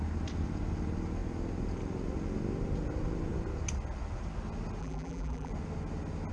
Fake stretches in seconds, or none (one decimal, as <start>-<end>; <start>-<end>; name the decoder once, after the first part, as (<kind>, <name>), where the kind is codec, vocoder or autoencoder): 4.8-5.5 (vocoder, BigVGAN v2)